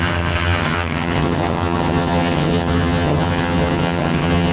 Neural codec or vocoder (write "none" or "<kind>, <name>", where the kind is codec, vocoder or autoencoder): vocoder, HiFi-GAN